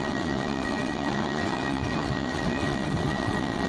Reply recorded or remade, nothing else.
remade